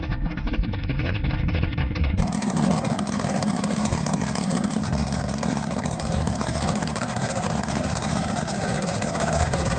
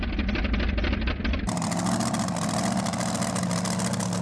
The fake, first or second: first